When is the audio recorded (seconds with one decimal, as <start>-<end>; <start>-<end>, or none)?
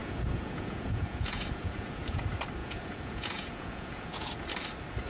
2.2-2.6; 4.3-5.1